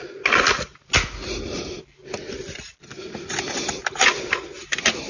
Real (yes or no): yes